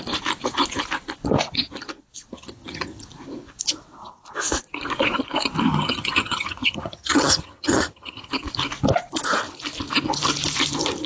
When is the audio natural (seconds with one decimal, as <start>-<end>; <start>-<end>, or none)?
0.0-2.3; 3.0-5.7; 8.3-11.1

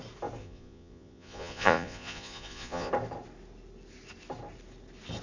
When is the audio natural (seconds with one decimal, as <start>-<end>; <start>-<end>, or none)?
0.0-0.4; 2.9-5.2

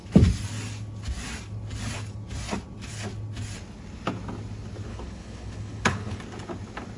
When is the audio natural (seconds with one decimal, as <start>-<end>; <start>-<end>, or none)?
0.0-4.9; 6.2-7.0

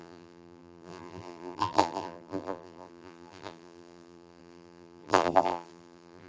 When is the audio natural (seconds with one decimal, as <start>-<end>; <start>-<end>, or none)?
none

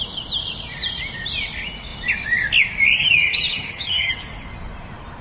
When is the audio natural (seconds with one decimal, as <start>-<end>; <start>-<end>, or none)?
0.0-3.0; 4.1-5.2